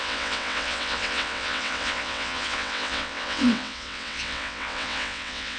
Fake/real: fake